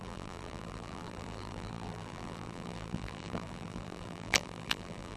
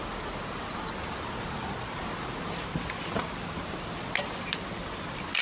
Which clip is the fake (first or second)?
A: first